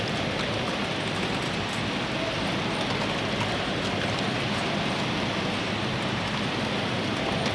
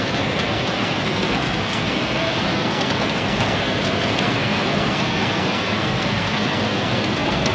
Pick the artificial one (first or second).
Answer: second